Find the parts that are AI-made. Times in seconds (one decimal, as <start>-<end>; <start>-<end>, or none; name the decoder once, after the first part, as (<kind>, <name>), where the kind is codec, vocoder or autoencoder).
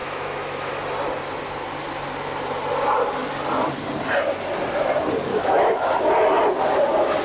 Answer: 0.0-0.7 (autoencoder, DAC-VAE); 5.3-5.9